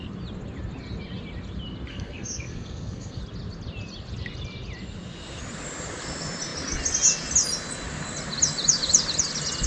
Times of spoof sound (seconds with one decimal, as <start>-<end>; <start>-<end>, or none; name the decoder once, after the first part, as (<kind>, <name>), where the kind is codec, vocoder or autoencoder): 1.9-3.2 (codec, SNAC)